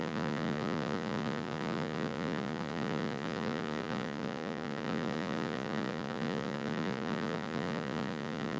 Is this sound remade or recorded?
remade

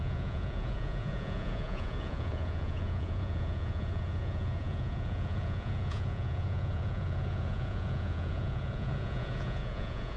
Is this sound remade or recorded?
remade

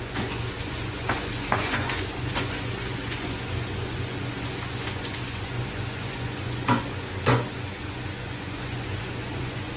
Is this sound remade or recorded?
remade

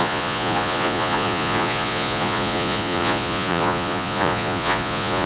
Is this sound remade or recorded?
remade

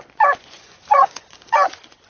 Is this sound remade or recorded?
remade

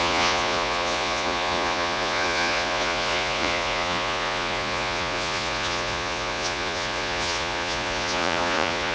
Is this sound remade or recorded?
remade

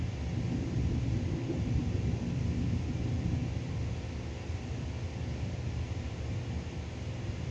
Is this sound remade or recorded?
recorded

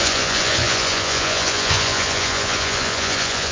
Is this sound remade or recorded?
remade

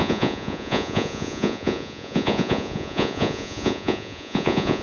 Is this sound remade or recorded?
remade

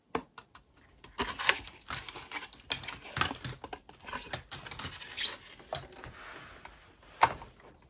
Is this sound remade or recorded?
recorded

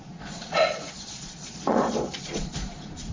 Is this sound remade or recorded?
remade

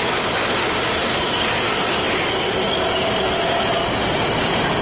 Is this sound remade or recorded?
recorded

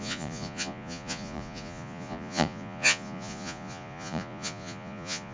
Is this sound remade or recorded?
remade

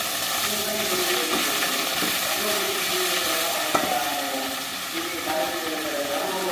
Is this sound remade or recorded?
recorded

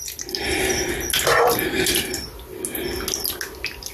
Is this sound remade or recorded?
recorded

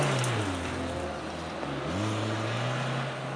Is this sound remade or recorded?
recorded